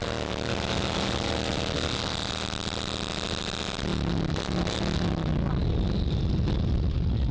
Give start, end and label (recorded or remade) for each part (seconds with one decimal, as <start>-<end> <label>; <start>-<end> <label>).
0.0-7.3 recorded